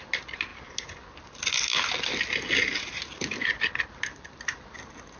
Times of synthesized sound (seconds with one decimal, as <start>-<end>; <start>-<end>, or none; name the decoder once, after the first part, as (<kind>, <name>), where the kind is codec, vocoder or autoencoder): none